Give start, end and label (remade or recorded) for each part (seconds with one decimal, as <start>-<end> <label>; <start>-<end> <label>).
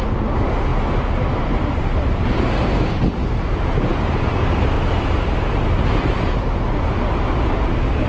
0.0-8.1 recorded